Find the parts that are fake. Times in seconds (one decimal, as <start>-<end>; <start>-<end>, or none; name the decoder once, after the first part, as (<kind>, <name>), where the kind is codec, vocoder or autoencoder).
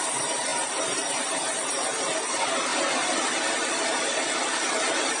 0.0-2.7 (vocoder, BigVGAN v2); 3.5-5.2